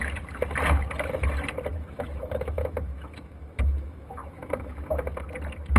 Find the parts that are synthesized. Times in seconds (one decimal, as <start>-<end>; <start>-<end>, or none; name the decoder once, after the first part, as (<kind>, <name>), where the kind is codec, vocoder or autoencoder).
1.7-5.2 (autoencoder, DAC-VAE)